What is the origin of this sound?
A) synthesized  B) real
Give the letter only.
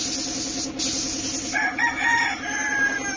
B